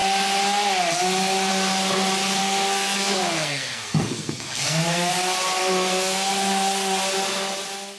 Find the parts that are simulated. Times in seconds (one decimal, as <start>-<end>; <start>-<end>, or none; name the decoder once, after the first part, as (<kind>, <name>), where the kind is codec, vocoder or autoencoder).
2.4-5.1 (codec, SNAC); 5.6-6.3